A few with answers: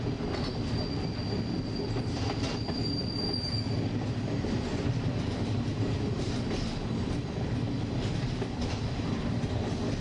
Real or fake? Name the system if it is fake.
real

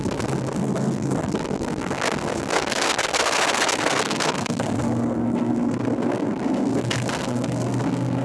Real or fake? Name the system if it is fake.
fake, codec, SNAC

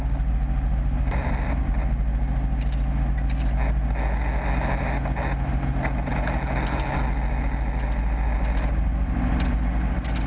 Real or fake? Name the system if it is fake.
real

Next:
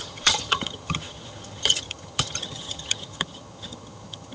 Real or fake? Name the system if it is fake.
fake, vocoder, HiFi-GAN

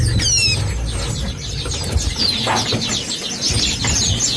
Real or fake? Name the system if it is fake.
real